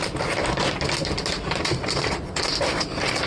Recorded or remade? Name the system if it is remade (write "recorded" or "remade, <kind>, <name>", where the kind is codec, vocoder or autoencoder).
recorded